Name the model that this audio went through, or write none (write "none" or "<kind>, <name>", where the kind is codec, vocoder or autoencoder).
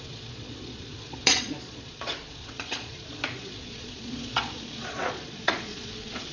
vocoder, Vocos